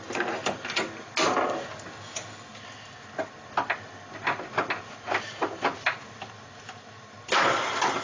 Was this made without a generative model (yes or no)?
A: yes